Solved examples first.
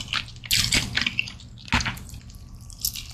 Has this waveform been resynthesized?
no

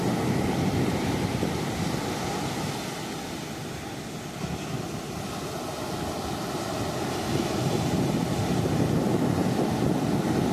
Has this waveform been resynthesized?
no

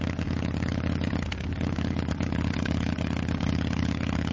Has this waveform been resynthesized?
yes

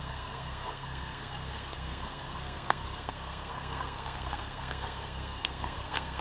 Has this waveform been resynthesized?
yes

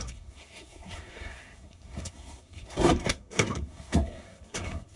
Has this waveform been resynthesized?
yes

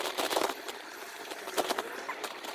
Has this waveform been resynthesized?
yes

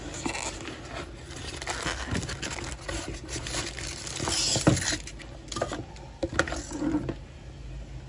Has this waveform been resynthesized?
no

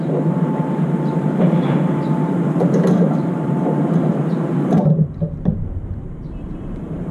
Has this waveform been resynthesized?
yes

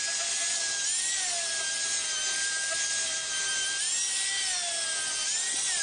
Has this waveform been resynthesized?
no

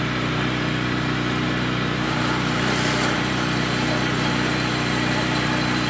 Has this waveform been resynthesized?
yes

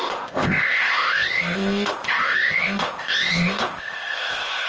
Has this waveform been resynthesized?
yes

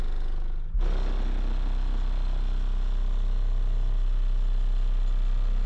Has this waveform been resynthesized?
no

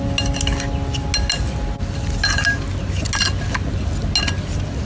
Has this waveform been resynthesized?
no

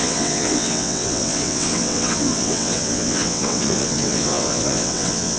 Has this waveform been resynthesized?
yes